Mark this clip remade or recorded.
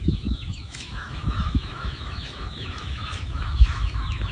remade